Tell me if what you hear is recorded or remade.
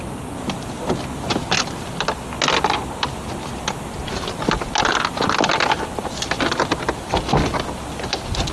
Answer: recorded